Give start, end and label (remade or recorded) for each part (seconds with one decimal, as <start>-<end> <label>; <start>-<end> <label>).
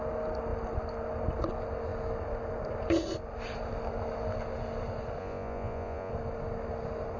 0.0-5.2 recorded; 5.2-6.1 remade; 6.1-7.2 recorded